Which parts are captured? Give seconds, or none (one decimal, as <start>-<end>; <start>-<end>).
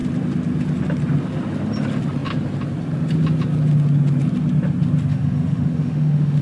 0.0-5.1